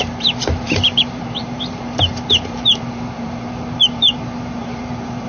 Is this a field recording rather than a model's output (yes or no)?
no